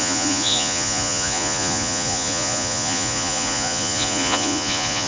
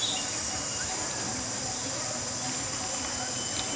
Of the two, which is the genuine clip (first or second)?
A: second